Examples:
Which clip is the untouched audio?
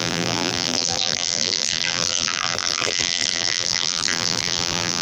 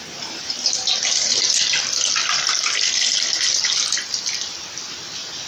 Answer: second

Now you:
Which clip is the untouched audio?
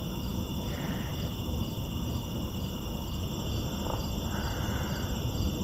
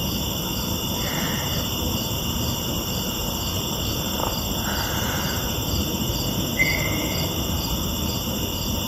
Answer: first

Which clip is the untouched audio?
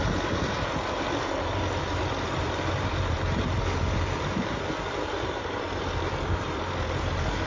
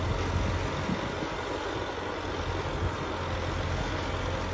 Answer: second